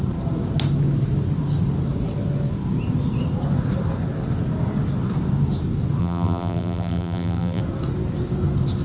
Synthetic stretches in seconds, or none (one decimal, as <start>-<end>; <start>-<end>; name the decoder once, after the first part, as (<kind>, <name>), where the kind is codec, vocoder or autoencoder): 6.0-7.6 (vocoder, BigVGAN v2)